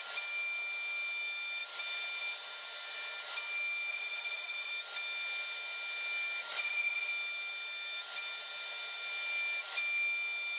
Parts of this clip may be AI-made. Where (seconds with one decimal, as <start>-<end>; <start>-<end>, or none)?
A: 3.9-4.7; 6.5-7.1